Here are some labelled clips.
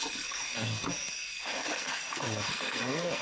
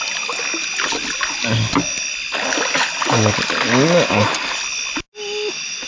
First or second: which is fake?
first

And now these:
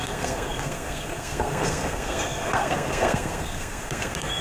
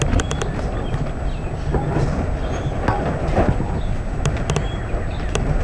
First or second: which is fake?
first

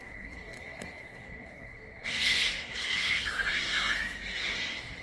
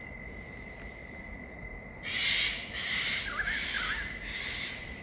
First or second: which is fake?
first